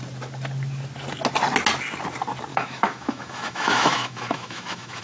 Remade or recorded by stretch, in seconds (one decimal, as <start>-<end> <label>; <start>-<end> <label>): 0.0-2.5 recorded; 2.5-5.0 remade

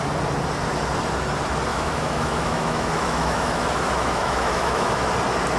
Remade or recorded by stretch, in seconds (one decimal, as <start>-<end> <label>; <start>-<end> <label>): 0.0-1.7 recorded; 1.7-5.1 remade; 5.1-5.6 recorded

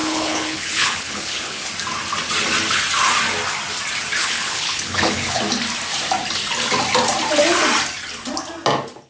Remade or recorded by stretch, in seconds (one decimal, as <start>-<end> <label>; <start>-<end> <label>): 0.0-1.7 remade; 1.7-4.2 recorded; 4.2-5.4 remade; 5.4-9.1 recorded

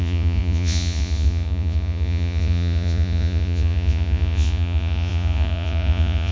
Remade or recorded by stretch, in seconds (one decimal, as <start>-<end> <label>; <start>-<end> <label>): 0.0-6.3 remade

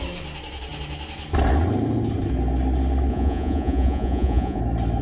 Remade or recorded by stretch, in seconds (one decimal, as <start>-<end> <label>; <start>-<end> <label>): 0.0-3.1 recorded; 3.1-4.6 remade; 4.6-5.0 recorded